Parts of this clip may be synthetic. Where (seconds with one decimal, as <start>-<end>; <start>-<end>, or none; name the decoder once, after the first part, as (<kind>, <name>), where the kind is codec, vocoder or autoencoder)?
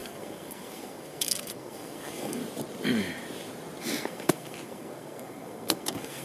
0.0-2.4 (codec, SNAC); 3.8-6.2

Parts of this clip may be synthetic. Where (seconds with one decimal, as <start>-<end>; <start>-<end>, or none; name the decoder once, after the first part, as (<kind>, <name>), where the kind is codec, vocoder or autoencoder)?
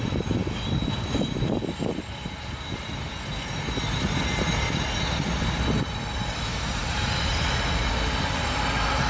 none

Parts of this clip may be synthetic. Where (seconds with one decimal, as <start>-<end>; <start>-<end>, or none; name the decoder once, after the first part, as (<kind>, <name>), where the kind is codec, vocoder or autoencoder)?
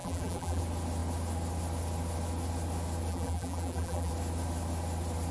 0.0-0.6 (vocoder, BigVGAN v2); 3.1-4.1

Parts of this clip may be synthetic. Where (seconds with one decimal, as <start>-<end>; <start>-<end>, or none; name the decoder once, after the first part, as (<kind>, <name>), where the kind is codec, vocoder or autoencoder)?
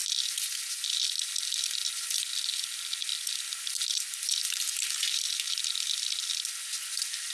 none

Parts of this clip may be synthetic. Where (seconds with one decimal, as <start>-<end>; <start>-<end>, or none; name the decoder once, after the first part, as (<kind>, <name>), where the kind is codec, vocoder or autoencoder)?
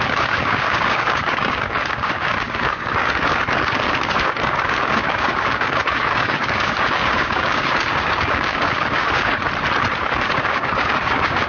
0.0-9.4 (codec, DAC); 10.0-11.5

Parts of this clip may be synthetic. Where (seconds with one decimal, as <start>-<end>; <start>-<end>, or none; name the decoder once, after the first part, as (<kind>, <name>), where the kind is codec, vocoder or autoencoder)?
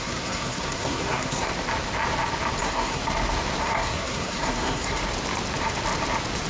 0.0-1.5 (codec, SNAC); 2.6-3.0; 3.6-5.0